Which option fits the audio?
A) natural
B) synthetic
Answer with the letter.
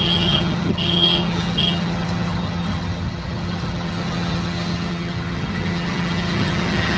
B